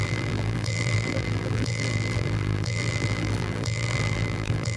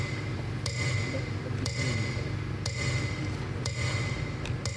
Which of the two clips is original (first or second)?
second